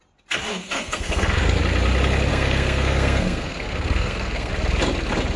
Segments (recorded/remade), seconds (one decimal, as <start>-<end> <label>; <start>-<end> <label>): 0.0-0.5 recorded; 0.5-1.6 remade; 1.6-2.3 recorded; 2.3-4.5 remade; 4.5-5.4 recorded

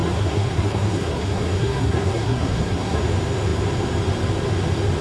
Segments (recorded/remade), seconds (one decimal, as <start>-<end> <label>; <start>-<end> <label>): 0.0-3.0 remade; 3.0-5.0 recorded

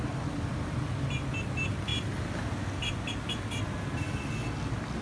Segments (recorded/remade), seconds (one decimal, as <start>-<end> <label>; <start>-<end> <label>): 0.0-5.0 recorded

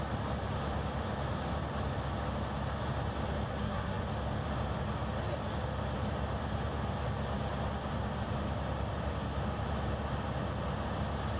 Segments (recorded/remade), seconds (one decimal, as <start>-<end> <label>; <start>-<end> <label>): 0.0-3.5 recorded; 3.5-4.0 remade; 4.0-11.4 recorded

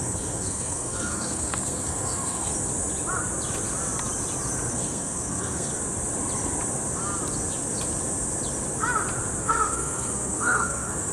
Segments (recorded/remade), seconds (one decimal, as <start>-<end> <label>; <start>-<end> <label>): 0.0-2.5 remade; 2.5-4.7 recorded; 4.7-5.7 remade; 5.7-9.4 recorded; 9.4-11.1 remade

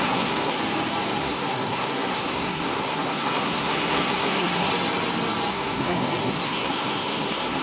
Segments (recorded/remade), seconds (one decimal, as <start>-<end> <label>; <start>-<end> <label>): 0.0-0.6 remade; 0.6-1.2 recorded; 1.2-4.7 remade; 4.7-5.5 recorded; 5.5-7.6 remade

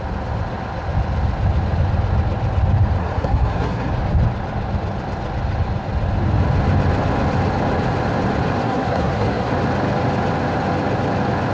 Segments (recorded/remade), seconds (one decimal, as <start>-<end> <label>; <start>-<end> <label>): 0.0-3.0 recorded; 3.0-3.9 remade; 3.9-8.6 recorded; 8.6-9.5 remade; 9.5-11.5 recorded